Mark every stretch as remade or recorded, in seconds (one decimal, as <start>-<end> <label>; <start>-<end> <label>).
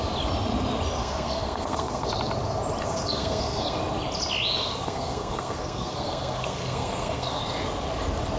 0.0-1.0 recorded; 1.0-2.1 remade; 2.1-2.8 recorded; 2.8-3.8 remade; 3.8-4.6 recorded; 4.6-7.4 remade; 7.4-8.4 recorded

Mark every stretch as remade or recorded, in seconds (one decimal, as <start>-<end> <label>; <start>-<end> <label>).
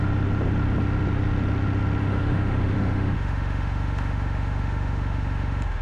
0.0-2.0 recorded; 2.0-5.8 remade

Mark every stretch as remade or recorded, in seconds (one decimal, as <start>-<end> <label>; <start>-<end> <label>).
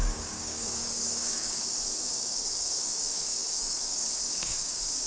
0.0-5.1 remade